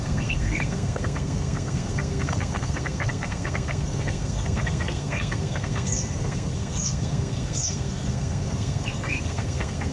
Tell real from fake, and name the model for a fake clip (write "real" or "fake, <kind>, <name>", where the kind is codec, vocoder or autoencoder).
fake, codec, SNAC